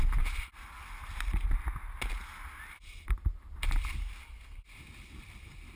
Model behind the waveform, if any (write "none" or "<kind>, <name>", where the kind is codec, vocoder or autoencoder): none